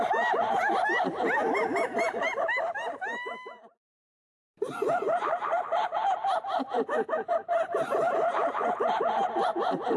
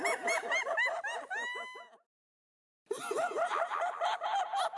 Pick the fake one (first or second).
first